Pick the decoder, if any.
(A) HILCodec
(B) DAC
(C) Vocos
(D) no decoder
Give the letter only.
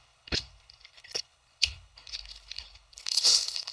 A